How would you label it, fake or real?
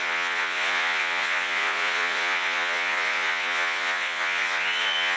fake